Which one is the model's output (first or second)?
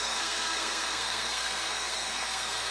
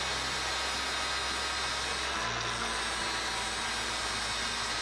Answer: first